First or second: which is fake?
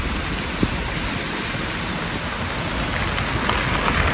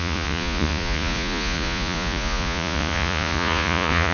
second